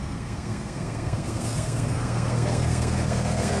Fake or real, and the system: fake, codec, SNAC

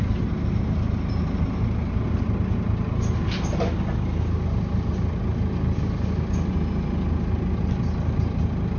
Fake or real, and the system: real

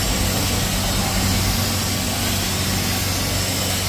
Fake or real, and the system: real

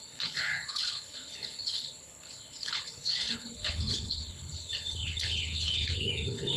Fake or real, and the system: fake, codec, HILCodec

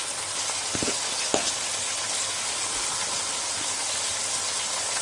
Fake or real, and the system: real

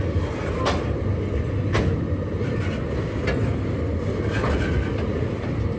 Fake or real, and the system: real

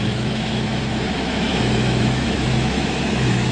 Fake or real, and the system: fake, autoencoder, DAC-VAE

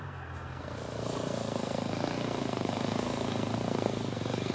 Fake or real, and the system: fake, codec, SNAC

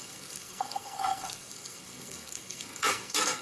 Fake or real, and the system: fake, codec, SNAC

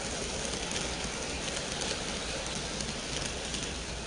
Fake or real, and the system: real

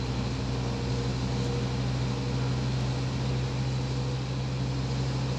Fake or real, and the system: real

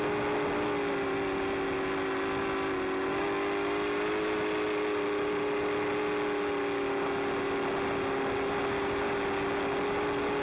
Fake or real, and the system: real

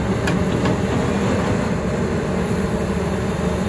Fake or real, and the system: real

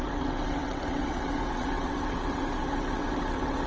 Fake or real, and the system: fake, vocoder, WaveNeXt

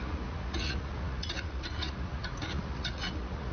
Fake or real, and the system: fake, vocoder, Vocos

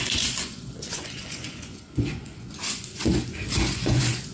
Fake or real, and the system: fake, vocoder, Vocos